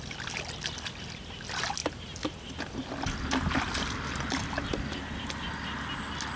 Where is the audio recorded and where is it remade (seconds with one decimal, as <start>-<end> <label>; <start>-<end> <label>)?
0.0-6.4 recorded